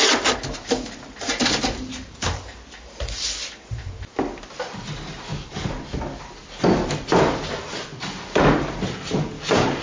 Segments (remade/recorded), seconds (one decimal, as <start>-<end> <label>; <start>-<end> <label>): 0.0-1.9 recorded; 1.9-3.9 remade; 3.9-9.8 recorded